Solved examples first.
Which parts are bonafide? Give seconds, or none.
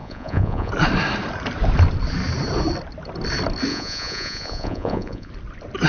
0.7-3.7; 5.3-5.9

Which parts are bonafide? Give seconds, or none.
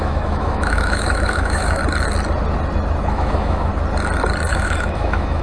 1.8-3.0; 3.7-4.5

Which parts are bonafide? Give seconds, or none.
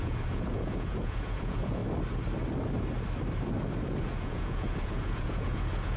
1.8-4.0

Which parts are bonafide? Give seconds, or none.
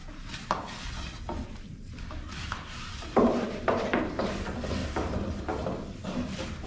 4.8-6.0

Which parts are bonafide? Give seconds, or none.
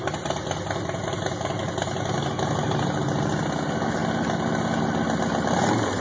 0.0-6.0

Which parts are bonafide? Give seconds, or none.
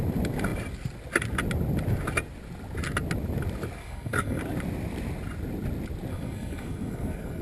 0.0-3.8; 4.4-6.1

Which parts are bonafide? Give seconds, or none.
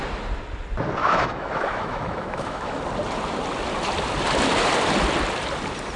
0.0-1.0; 2.8-6.0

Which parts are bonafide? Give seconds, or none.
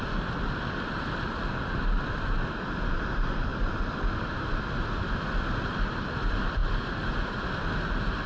0.0-8.3